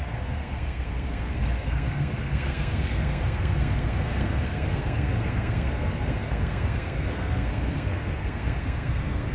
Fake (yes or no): yes